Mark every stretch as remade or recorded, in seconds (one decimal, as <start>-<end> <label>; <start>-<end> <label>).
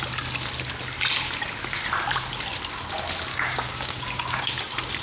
0.0-3.3 recorded; 3.3-4.5 remade; 4.5-5.0 recorded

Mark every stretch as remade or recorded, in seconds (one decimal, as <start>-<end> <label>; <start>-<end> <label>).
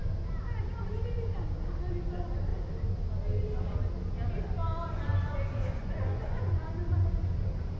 0.0-5.8 recorded; 5.8-6.7 remade; 6.7-7.8 recorded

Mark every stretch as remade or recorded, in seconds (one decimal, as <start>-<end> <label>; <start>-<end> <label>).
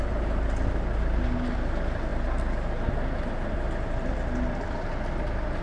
0.0-5.6 recorded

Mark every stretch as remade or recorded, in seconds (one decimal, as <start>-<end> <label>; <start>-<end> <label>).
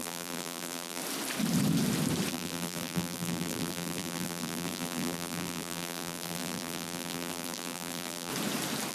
0.0-1.0 remade; 1.0-2.3 recorded; 2.3-8.3 remade; 8.3-8.9 recorded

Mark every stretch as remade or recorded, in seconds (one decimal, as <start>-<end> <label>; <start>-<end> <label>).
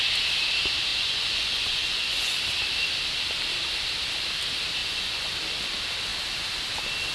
0.0-0.9 recorded; 0.9-2.4 remade; 2.4-4.8 recorded; 4.8-5.3 remade; 5.3-7.1 recorded